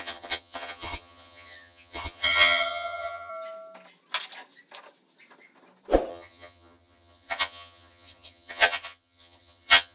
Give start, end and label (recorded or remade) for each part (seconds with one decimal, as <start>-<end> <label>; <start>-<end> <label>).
0.0-3.3 remade; 3.3-6.1 recorded; 6.1-9.9 remade